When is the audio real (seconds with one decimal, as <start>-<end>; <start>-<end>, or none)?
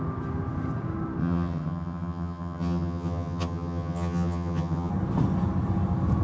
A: 0.0-1.2; 4.9-6.2